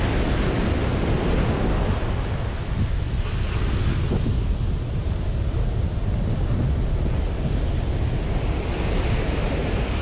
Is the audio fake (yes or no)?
no